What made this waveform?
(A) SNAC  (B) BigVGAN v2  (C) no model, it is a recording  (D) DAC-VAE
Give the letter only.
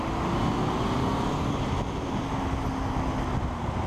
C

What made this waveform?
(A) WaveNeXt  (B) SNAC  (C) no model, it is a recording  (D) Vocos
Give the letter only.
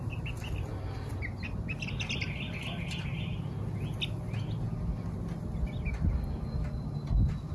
C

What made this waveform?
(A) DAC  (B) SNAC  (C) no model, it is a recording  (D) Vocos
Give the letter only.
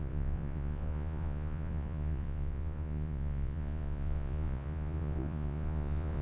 D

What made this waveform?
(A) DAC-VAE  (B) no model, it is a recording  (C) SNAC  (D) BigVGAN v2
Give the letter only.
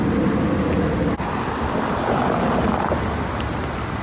B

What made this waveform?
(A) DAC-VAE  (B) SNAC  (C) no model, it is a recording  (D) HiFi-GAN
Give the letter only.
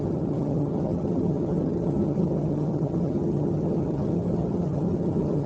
D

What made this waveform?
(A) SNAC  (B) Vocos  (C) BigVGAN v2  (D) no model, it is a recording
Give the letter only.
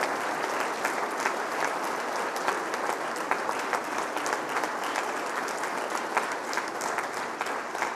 D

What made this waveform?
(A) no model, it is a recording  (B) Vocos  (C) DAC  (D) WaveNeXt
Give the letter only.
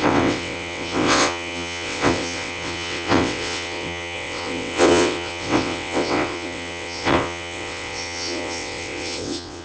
D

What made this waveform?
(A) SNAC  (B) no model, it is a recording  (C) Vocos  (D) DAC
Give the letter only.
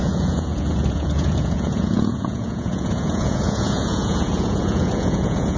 C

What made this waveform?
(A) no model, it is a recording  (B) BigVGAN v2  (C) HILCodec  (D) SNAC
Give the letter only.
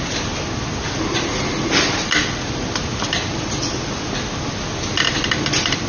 A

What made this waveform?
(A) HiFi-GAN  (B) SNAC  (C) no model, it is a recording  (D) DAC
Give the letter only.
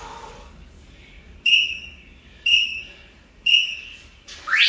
D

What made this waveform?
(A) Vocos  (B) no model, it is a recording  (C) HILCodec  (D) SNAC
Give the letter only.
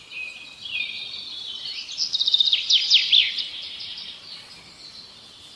B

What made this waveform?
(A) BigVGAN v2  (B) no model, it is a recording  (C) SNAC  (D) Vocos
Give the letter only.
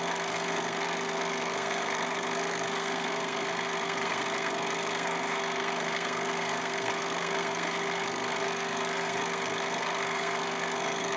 C